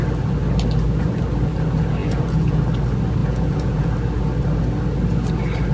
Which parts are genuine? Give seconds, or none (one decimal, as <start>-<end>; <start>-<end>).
0.0-2.0; 2.6-3.2; 3.9-5.7